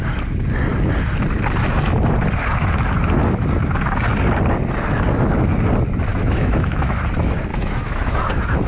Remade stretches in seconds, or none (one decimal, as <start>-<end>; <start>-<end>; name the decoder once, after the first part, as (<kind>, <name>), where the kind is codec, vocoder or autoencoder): 6.1-7.0 (autoencoder, DAC-VAE); 7.5-8.7